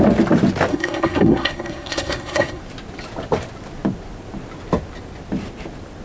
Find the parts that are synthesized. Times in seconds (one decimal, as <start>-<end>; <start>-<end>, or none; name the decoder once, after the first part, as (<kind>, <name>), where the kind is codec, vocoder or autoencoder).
0.7-2.6 (codec, SNAC)